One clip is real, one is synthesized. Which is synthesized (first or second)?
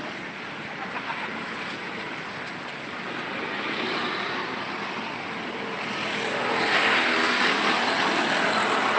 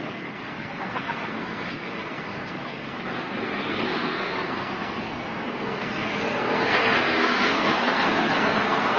second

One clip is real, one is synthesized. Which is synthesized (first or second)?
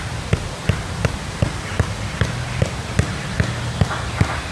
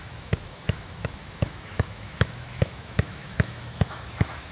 second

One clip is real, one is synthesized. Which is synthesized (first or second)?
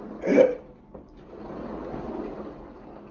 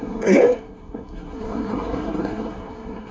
second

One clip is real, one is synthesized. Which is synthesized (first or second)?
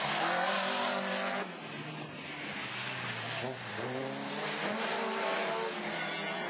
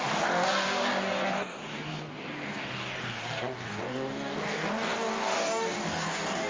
second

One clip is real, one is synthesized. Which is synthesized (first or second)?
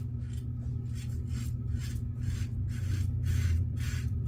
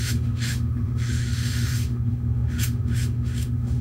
second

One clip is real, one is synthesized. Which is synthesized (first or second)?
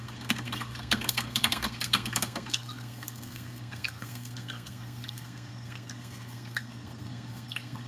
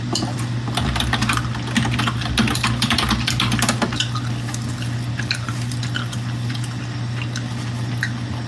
first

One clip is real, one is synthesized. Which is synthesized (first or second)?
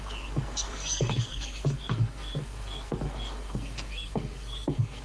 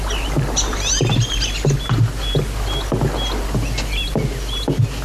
first